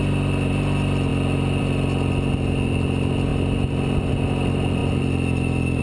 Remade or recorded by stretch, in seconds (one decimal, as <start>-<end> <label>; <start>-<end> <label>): 0.0-5.8 recorded